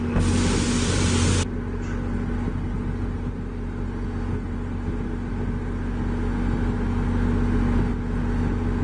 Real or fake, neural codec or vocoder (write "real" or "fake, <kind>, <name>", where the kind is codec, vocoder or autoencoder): real